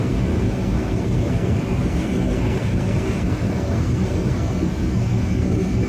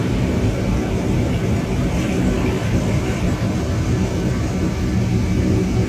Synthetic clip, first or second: first